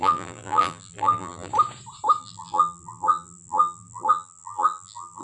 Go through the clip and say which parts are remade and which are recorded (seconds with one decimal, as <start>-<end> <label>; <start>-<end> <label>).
0.0-1.5 remade; 1.5-2.2 recorded; 2.2-5.2 remade